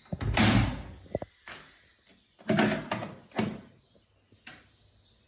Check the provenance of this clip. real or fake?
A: real